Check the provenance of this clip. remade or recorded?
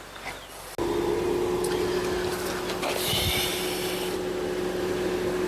recorded